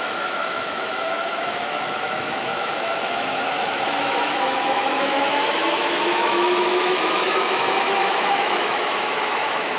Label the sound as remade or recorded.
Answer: remade